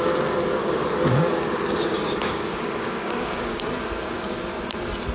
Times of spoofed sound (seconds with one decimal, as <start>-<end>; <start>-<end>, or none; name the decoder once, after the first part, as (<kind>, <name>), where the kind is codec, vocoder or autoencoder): 0.6-3.7 (codec, DAC)